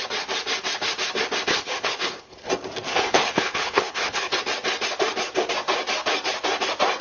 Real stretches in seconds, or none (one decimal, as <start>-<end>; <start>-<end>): 0.0-1.5; 2.5-2.9; 4.4-7.0